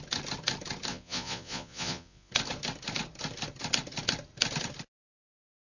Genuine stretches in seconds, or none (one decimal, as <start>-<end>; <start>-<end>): 0.0-0.9; 2.3-5.6